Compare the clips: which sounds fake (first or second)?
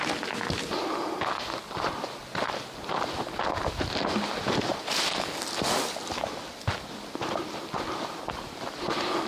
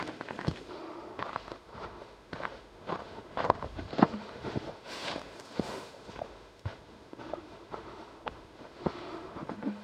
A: second